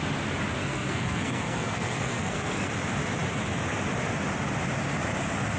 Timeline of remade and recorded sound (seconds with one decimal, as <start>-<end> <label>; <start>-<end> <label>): 0.0-0.6 recorded; 0.6-2.7 remade; 2.7-5.6 recorded